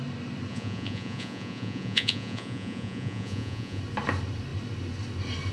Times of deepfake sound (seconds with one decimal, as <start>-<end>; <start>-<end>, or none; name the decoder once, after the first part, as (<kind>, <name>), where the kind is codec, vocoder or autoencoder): 0.5-3.8 (vocoder, Vocos)